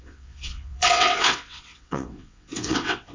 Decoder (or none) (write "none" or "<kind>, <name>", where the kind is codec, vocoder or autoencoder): vocoder, WaveNeXt